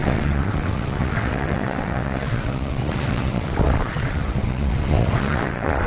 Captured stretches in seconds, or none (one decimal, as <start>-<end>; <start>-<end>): none